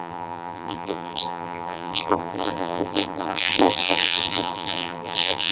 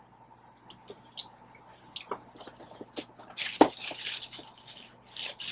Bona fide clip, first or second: second